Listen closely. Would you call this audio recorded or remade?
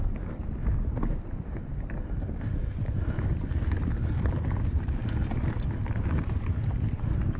recorded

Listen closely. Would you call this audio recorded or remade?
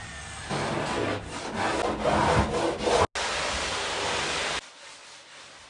recorded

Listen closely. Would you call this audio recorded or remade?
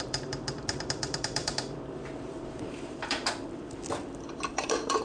remade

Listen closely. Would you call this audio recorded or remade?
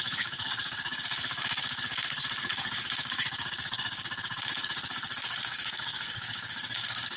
remade